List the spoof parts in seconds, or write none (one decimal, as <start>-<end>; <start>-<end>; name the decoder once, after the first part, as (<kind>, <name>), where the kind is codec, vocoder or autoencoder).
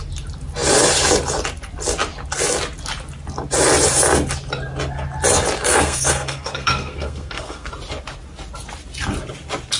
5.7-7.7 (codec, SNAC)